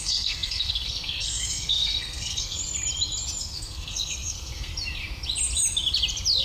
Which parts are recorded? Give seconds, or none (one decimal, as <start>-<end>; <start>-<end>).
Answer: 2.6-3.4; 4.7-6.4

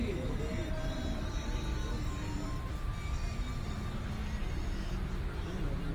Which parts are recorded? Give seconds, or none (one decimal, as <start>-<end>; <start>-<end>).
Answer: 0.0-5.9

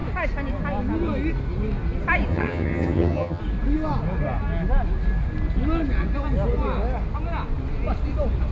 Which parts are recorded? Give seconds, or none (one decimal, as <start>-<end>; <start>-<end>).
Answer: 0.0-2.3; 3.4-8.5

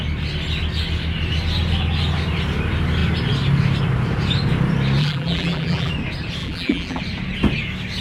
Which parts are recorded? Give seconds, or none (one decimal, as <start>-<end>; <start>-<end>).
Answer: 0.0-5.0; 5.9-6.4; 7.0-8.0